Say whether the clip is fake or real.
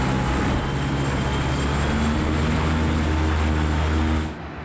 real